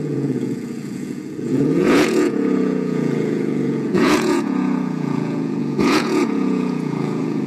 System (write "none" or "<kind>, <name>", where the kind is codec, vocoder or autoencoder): vocoder, Vocos